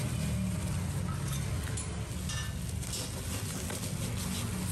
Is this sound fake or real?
real